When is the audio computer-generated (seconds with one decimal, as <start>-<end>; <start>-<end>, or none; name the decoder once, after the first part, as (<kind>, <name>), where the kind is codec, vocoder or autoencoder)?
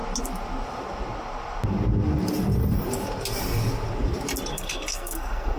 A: 4.5-5.6 (codec, SNAC)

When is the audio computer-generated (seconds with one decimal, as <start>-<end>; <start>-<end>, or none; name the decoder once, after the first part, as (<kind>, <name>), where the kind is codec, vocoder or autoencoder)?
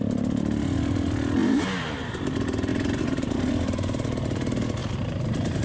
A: 1.4-2.1 (vocoder, BigVGAN v2); 2.7-3.5; 4.8-5.6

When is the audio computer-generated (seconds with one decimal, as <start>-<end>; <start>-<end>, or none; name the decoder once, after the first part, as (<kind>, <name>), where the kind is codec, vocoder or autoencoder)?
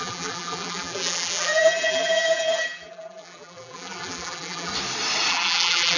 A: 0.0-4.7 (vocoder, BigVGAN v2); 5.3-6.0